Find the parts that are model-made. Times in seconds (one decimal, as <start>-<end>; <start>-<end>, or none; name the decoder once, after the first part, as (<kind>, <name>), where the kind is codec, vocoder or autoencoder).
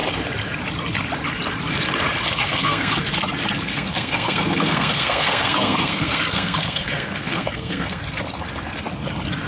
2.4-3.0 (codec, SNAC); 3.7-8.0